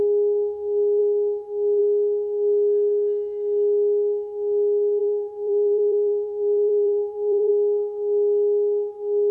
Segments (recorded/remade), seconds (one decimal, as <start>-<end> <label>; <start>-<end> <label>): 0.0-5.0 recorded; 5.0-7.5 remade; 7.5-9.3 recorded